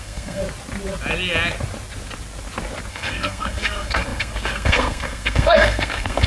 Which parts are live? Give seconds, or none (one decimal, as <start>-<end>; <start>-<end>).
0.4-2.9